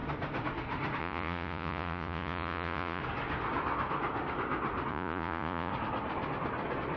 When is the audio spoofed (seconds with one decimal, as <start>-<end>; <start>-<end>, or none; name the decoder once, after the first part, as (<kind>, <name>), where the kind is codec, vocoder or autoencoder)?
1.0-3.0 (vocoder, Vocos); 4.9-5.7